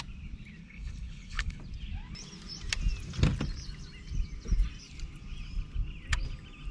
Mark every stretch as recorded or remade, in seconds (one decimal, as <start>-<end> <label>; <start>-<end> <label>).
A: 0.0-0.6 recorded; 0.6-1.6 remade; 1.6-6.7 recorded